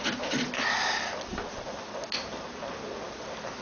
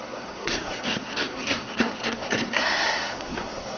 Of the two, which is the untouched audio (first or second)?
first